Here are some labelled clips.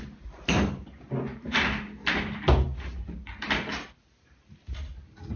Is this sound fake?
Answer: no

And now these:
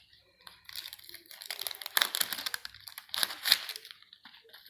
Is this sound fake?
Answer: no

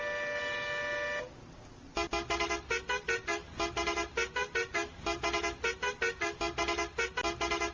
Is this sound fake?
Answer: no